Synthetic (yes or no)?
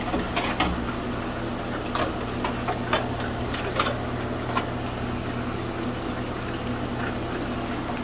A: no